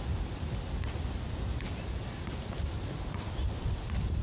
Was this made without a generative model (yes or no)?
yes